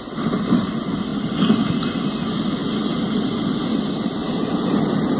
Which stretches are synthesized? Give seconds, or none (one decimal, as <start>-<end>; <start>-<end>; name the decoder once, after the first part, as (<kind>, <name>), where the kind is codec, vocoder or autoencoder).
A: none